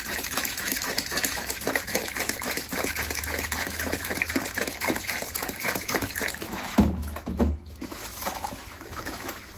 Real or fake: fake